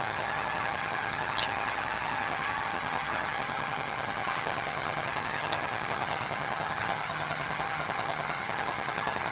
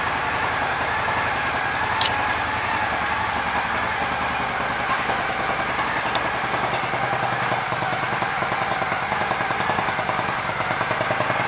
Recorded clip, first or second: second